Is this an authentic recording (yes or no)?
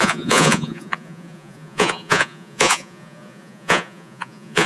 no